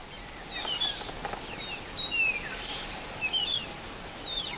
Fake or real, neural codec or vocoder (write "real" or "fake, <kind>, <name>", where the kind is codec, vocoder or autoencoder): real